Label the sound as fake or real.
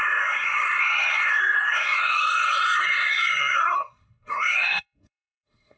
fake